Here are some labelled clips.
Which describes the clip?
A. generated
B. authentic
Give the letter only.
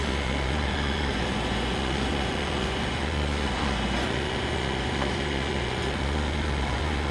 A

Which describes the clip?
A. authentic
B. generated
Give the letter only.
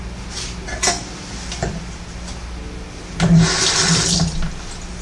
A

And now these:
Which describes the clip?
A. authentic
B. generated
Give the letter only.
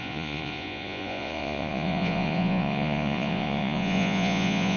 B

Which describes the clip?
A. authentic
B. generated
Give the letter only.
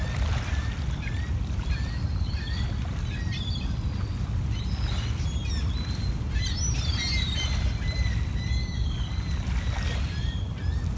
A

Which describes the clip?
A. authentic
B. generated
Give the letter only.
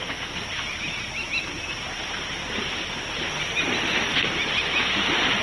A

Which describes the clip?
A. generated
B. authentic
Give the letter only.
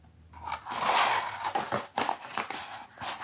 B